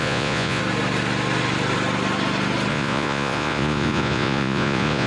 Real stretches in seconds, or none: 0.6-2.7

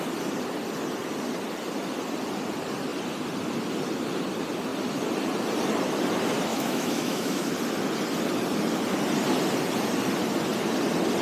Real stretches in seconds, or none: 0.0-6.5; 7.5-11.2

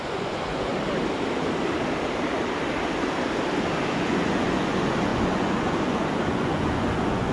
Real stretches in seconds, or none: 0.7-3.9

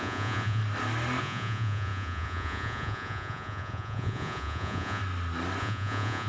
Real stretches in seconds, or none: 0.6-1.2; 5.0-5.6

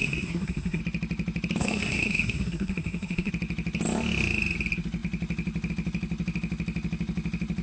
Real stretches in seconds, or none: 0.8-1.6; 3.3-7.6

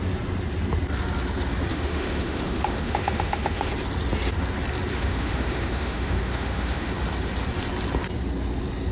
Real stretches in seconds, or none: 0.0-1.7; 3.7-4.9; 6.9-8.9